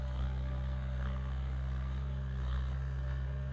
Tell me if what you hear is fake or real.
fake